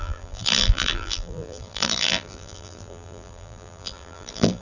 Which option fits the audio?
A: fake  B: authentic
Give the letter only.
A